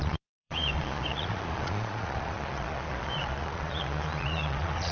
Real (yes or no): no